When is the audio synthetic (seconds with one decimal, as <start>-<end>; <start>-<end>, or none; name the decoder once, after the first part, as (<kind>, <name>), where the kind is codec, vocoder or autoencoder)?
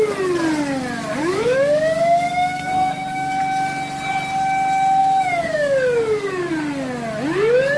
1.2-3.4 (codec, DAC); 5.0-6.5